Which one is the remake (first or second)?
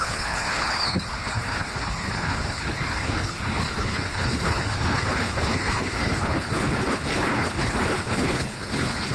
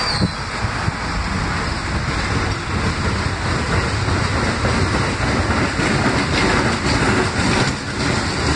first